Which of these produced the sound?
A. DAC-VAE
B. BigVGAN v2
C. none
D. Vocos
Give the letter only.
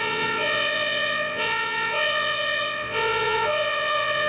D